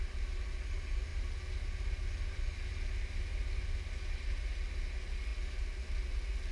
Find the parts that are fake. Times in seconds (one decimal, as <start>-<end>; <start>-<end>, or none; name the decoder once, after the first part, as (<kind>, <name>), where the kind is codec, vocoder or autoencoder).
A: none